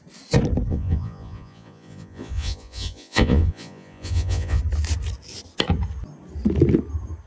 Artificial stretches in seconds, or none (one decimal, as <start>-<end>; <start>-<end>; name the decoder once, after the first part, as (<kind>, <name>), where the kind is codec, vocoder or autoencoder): 0.7-4.6 (vocoder, Vocos)

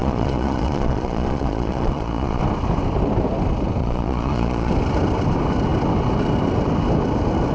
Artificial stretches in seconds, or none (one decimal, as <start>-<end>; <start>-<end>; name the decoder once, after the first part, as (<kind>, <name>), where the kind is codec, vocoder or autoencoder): 0.0-2.4 (vocoder, Vocos); 3.8-4.7

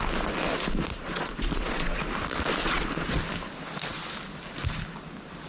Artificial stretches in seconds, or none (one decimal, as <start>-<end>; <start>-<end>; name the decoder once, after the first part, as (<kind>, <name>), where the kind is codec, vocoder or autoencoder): 0.9-2.0 (vocoder, Vocos); 2.6-3.2

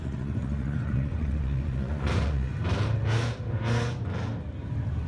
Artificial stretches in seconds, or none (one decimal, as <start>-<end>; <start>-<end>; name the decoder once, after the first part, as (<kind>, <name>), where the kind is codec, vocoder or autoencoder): 0.0-2.5 (vocoder, Vocos)

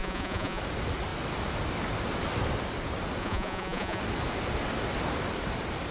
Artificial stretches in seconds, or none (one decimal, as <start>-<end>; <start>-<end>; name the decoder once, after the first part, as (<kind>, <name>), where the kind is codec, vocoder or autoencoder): 0.0-0.6 (vocoder, Vocos); 3.2-4.0

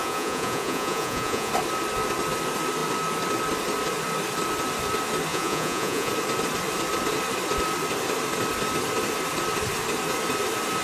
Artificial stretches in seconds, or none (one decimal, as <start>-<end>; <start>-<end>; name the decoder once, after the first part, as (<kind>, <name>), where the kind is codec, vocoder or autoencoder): 0.0-1.5 (vocoder, Vocos); 5.3-6.1

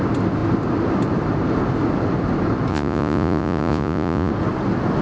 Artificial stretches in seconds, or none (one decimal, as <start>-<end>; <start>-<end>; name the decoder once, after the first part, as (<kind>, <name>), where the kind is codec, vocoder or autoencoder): 2.7-4.3 (vocoder, Vocos)

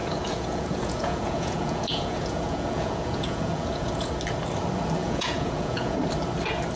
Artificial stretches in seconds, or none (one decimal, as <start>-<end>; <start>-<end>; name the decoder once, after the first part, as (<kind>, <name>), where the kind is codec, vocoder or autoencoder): 0.0-4.1 (vocoder, Vocos); 5.0-6.0